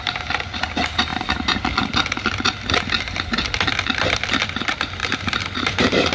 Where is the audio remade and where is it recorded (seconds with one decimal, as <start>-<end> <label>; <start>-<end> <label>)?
0.0-5.0 recorded; 5.0-6.1 remade